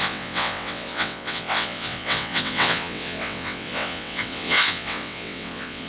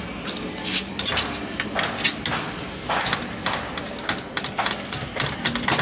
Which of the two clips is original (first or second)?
second